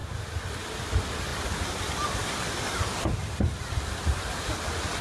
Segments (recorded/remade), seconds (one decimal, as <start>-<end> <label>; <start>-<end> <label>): 0.0-1.3 recorded; 1.3-4.3 remade; 4.3-5.0 recorded